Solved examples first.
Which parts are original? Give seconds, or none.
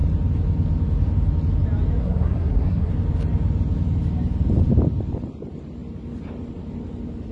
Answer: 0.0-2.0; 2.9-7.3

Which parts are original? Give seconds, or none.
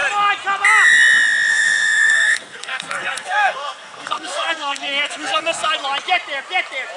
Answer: 0.0-1.5; 5.7-7.0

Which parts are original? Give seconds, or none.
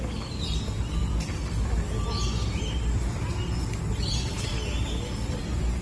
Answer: 0.0-5.8